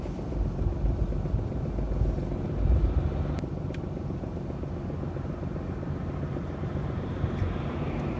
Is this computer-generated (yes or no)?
no